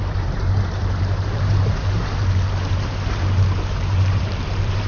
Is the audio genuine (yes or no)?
no